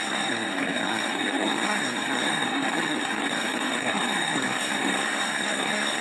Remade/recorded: remade